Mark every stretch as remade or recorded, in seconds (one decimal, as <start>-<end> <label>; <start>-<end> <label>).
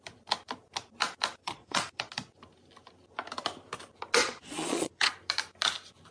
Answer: 0.0-1.4 recorded; 1.4-2.1 remade; 2.1-4.2 recorded; 4.2-5.1 remade; 5.1-6.1 recorded